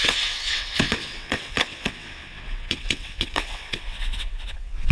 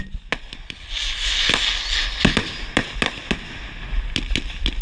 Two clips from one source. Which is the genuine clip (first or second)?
second